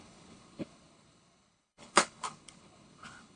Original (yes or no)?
no